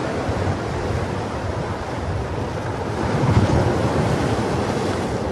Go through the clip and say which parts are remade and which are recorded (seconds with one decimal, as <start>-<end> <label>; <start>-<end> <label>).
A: 0.0-3.2 recorded; 3.2-3.6 remade; 3.6-5.3 recorded